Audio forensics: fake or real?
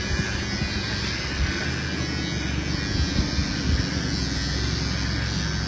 real